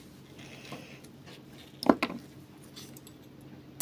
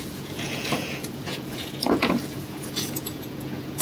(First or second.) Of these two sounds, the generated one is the second